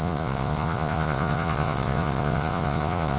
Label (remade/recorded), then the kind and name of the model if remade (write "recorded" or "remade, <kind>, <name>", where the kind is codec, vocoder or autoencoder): remade, vocoder, Vocos